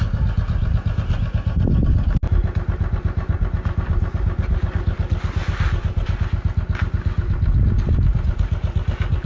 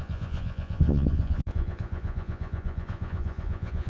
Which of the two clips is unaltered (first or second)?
first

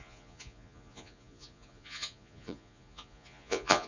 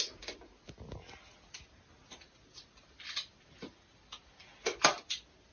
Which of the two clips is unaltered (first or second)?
second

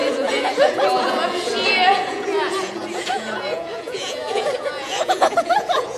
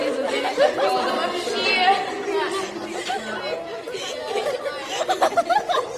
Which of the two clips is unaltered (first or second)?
second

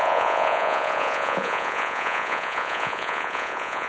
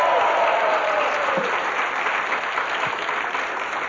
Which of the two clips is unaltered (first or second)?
second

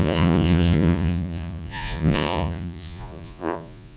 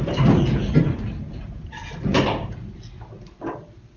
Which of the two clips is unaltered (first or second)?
second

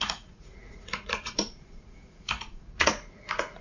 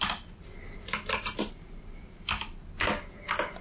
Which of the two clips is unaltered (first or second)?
second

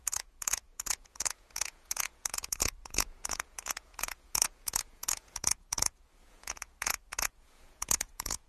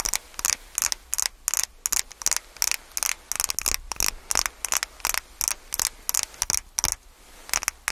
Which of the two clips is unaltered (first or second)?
second